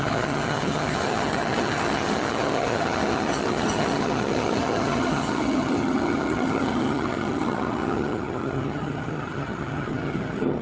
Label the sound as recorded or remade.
remade